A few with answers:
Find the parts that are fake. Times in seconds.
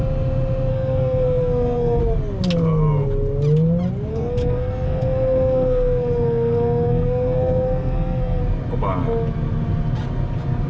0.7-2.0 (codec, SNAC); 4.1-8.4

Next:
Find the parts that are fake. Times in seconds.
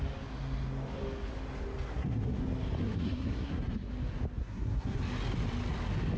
1.9-2.4 (codec, SNAC); 2.8-3.9; 4.4-5.0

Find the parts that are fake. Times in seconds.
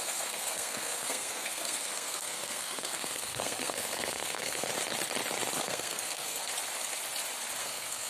0.0-4.7 (codec, SNAC); 5.6-6.5; 7.6-8.1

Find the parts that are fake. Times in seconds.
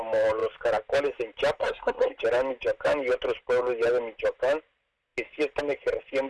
1.6-2.2 (codec, SNAC)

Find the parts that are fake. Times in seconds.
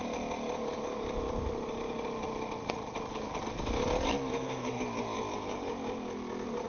4.3-4.8 (codec, SNAC)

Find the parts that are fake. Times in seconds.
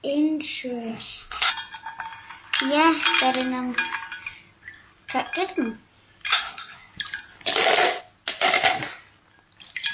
0.9-1.5 (codec, SNAC); 6.3-6.9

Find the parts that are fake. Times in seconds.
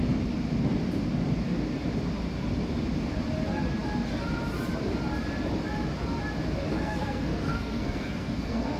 6.7-8.8 (codec, SNAC)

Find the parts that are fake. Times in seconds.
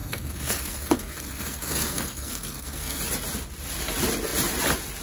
0.0-3.0 (codec, SNAC)